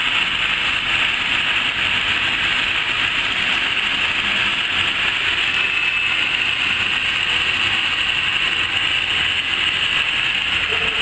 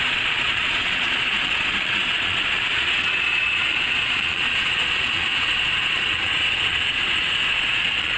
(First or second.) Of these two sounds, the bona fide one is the first